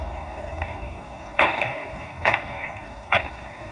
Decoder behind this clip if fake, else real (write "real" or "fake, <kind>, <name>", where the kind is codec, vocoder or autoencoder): fake, codec, DAC